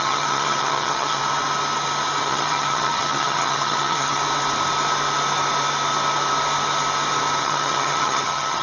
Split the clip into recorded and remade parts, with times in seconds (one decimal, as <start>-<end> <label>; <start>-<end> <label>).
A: 0.0-1.2 remade; 1.2-2.2 recorded; 2.2-4.2 remade; 4.2-7.4 recorded; 7.4-8.6 remade